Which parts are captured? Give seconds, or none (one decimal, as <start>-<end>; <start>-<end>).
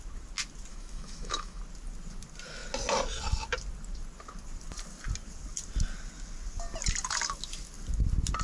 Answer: 0.0-0.7; 1.6-8.4